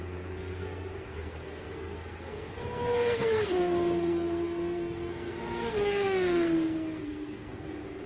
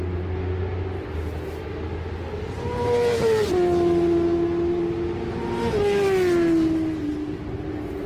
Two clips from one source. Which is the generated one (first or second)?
first